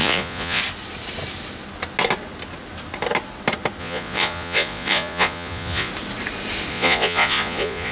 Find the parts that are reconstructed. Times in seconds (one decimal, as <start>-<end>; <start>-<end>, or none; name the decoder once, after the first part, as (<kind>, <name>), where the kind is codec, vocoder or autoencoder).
0.0-0.6 (vocoder, Vocos); 3.8-5.9; 6.7-7.9